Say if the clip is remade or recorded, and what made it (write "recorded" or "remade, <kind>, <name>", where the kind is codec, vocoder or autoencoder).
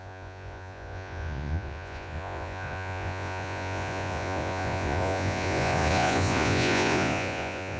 remade, vocoder, Vocos